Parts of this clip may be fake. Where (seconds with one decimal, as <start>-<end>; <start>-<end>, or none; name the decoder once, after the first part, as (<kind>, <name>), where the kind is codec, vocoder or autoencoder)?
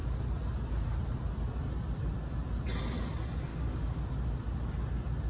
3.5-4.0 (codec, DAC)